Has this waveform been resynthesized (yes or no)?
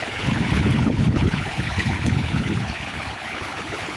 yes